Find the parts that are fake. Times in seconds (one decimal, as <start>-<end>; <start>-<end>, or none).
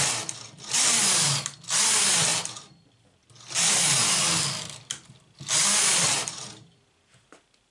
none